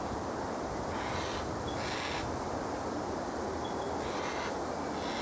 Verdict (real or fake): real